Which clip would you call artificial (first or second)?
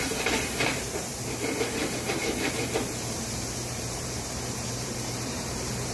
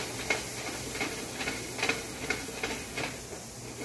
first